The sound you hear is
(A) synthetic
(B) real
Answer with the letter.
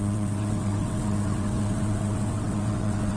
A